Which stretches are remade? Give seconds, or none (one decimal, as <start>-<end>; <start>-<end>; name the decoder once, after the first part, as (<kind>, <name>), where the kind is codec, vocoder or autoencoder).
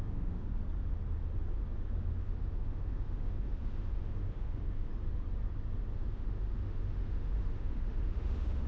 0.0-0.5 (autoencoder, DAC-VAE); 2.2-4.9; 6.1-8.7